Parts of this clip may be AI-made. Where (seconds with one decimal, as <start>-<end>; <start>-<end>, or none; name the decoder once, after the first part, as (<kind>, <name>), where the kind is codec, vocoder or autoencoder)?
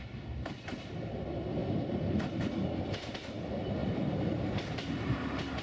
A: 1.6-2.5 (vocoder, BigVGAN v2); 3.8-5.6